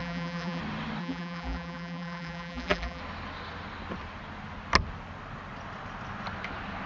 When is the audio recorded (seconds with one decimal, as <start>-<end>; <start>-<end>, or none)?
0.6-1.0; 3.0-6.9